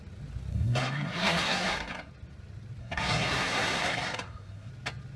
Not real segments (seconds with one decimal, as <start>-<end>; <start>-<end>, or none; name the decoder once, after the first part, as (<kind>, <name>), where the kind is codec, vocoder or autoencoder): 0.5-2.1 (codec, SNAC); 2.8-4.7